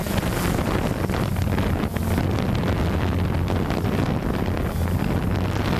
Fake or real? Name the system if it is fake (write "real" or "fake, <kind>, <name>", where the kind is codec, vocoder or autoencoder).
real